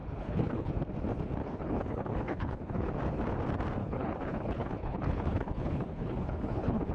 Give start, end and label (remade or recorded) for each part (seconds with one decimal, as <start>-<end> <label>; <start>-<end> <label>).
0.0-0.7 remade; 0.7-1.4 recorded; 1.4-2.9 remade; 2.9-3.8 recorded; 3.8-6.9 remade